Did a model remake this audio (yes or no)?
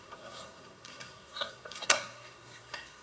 yes